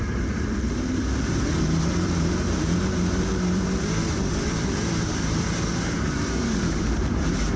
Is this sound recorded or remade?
remade